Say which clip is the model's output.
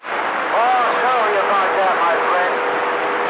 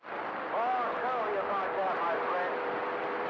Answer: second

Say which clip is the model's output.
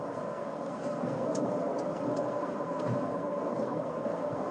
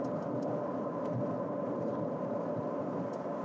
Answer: first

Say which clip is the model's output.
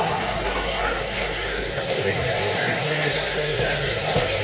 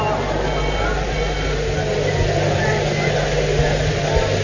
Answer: first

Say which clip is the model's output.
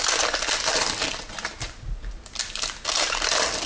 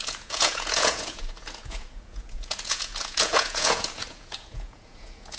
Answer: second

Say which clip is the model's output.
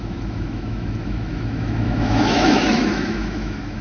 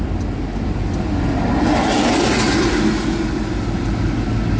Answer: first